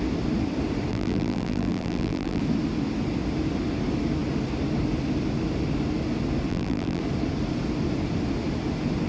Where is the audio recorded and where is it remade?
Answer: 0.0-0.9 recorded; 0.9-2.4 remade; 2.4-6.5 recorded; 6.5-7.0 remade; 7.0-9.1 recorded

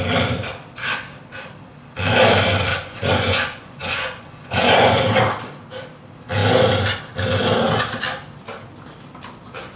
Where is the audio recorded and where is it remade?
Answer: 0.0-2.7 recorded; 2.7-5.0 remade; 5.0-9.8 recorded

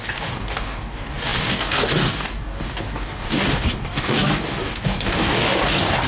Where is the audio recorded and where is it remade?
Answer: 0.0-6.1 remade